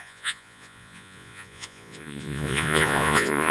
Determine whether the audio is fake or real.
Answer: fake